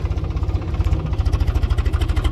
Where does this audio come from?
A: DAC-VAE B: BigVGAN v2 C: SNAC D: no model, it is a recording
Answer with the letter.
D